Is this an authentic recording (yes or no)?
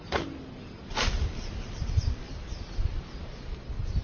yes